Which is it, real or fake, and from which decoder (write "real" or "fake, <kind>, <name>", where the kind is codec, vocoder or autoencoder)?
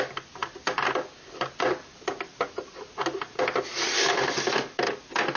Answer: real